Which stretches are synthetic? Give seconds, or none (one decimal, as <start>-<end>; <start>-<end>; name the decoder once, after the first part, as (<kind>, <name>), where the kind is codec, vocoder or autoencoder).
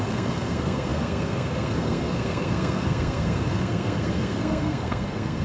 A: 0.0-5.4 (codec, SNAC)